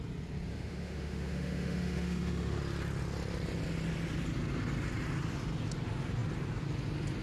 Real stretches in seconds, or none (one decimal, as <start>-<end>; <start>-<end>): 0.0-0.5; 2.6-7.2

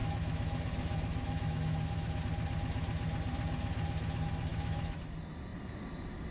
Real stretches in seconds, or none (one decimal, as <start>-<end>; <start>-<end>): 2.2-4.5; 5.0-6.3

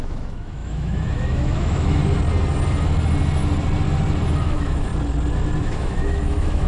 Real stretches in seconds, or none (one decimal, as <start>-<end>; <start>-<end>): 2.0-4.4; 4.9-5.6

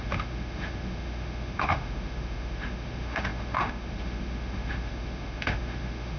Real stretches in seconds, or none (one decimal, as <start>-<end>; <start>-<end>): none

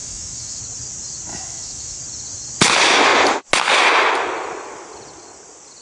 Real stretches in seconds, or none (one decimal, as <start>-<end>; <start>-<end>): 0.6-1.3; 2.0-5.8

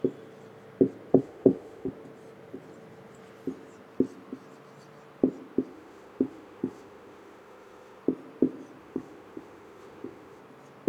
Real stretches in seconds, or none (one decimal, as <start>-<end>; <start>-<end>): 0.0-1.1; 1.9-5.7; 8.0-8.8; 10.4-10.9